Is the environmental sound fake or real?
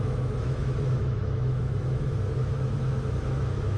fake